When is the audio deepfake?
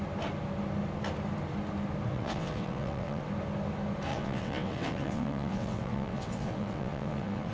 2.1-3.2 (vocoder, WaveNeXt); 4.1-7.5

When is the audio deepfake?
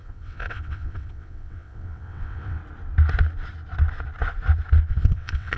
0.0-2.6 (vocoder, WaveNeXt); 4.9-5.6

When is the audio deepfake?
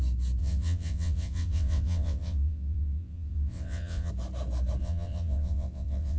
0.4-4.1 (vocoder, WaveNeXt); 4.8-6.2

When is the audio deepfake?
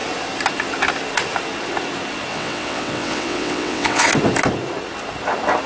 2.3-4.1 (vocoder, WaveNeXt)